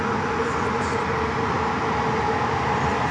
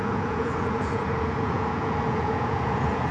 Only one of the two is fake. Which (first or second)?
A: second